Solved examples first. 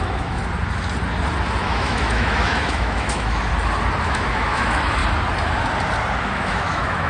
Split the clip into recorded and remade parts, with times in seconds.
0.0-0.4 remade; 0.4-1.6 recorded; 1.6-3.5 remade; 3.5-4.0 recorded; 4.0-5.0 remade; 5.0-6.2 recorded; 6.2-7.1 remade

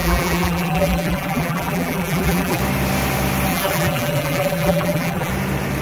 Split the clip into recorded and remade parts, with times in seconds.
0.0-2.6 remade; 2.6-3.5 recorded; 3.5-5.3 remade; 5.3-5.8 recorded

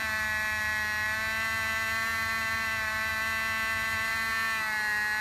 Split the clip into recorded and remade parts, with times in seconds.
0.0-5.2 recorded

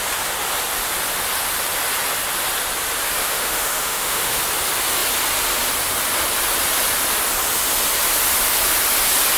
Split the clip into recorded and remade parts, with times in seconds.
0.0-3.2 recorded; 3.2-4.4 remade; 4.4-9.4 recorded

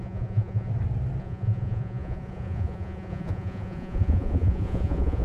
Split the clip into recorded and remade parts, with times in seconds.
0.0-0.7 remade; 0.7-1.2 recorded; 1.2-5.2 remade

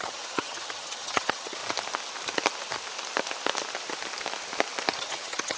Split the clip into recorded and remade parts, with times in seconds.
0.0-1.6 remade; 1.6-5.0 recorded; 5.0-5.6 remade